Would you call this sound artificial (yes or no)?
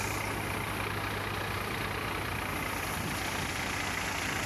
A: no